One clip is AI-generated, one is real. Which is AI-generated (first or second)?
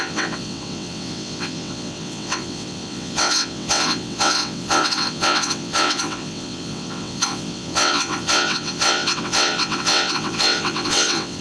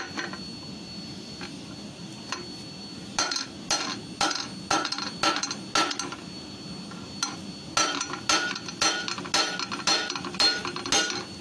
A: first